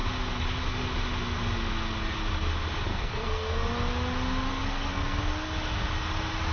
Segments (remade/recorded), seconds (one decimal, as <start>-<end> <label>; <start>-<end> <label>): 0.0-2.9 recorded; 2.9-3.7 remade; 3.7-4.5 recorded; 4.5-5.2 remade; 5.2-6.5 recorded